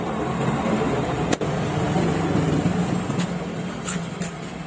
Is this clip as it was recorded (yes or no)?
yes